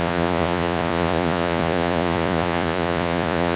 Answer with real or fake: fake